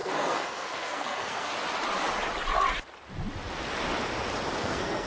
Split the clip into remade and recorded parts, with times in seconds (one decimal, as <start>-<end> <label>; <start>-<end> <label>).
0.0-1.5 remade; 1.5-4.6 recorded; 4.6-5.1 remade